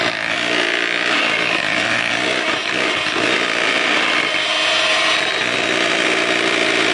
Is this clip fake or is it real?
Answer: real